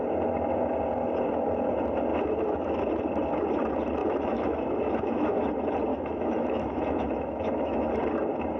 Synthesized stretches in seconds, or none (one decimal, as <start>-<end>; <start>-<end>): 2.1-2.9; 4.0-5.5; 5.9-7.9